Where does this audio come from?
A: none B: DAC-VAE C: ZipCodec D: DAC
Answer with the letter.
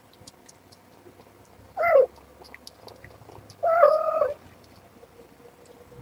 A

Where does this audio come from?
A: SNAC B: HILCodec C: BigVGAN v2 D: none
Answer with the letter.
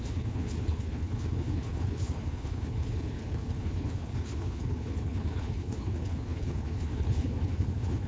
B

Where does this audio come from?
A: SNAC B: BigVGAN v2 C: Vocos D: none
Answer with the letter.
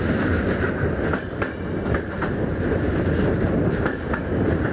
D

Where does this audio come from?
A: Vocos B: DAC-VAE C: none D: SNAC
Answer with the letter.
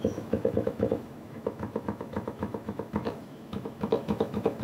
B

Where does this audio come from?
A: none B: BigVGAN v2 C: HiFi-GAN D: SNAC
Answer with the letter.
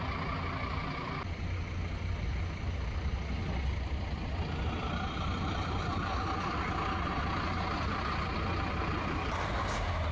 A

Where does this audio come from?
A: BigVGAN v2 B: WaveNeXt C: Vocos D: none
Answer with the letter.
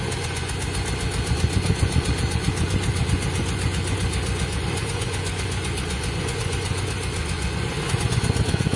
C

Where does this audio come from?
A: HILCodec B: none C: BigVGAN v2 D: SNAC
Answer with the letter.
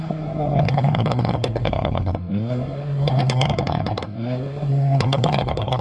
D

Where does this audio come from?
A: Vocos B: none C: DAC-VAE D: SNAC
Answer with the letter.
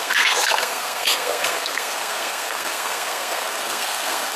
D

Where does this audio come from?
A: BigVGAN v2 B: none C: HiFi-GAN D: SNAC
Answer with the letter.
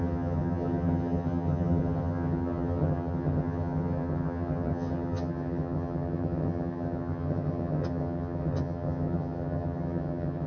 C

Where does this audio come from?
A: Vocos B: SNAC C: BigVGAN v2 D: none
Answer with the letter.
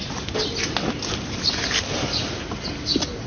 D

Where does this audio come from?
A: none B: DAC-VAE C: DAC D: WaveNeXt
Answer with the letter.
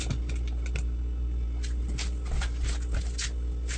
A